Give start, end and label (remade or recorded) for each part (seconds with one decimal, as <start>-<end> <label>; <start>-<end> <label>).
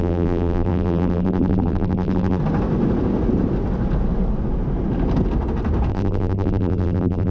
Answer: 0.0-2.4 remade; 2.4-5.9 recorded; 5.9-7.3 remade